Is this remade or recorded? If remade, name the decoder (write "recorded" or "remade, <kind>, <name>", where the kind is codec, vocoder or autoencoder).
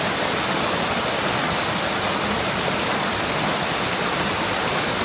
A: recorded